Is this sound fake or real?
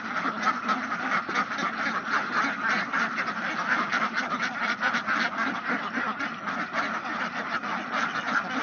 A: real